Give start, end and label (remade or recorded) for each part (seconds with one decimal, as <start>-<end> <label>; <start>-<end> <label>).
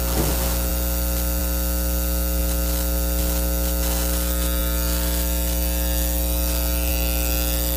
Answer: 0.0-7.8 recorded